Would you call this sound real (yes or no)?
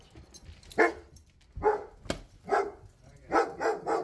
yes